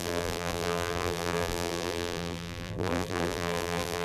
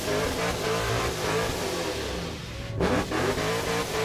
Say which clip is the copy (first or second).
first